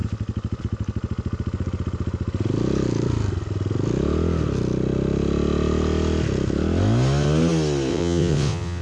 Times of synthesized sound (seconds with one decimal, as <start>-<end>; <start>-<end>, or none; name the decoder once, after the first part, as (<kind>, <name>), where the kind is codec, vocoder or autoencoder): 7.9-8.8 (vocoder, WaveNeXt)